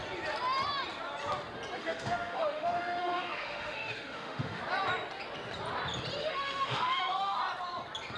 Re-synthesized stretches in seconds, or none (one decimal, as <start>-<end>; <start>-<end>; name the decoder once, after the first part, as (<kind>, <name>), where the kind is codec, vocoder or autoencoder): 1.8-4.6 (autoencoder, DAC-VAE); 6.2-7.4